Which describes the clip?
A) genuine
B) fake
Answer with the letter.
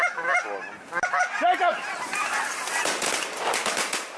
A